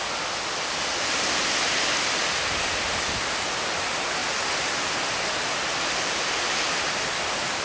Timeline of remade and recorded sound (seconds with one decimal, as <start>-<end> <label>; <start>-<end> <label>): 0.0-7.6 recorded